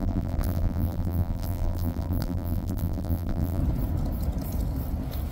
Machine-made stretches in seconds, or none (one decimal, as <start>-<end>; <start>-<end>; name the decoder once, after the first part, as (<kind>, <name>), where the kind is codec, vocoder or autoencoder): 0.0-3.6 (vocoder, BigVGAN v2)

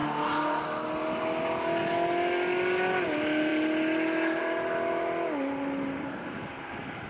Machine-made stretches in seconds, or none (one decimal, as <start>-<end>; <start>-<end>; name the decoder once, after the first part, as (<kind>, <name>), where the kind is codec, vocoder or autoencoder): none

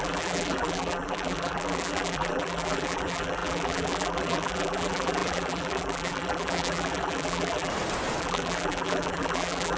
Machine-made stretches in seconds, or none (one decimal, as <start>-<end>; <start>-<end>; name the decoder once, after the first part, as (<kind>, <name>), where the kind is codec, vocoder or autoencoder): 0.0-7.7 (vocoder, BigVGAN v2); 8.2-9.8

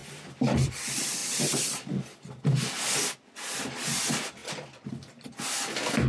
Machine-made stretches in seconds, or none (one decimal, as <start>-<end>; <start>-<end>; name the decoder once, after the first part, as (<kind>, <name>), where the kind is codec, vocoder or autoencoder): 4.4-4.9 (vocoder, BigVGAN v2)